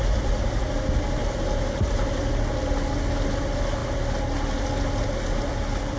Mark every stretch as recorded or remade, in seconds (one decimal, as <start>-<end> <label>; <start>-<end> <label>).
0.0-6.0 recorded